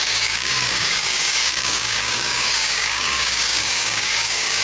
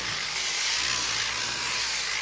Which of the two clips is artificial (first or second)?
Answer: first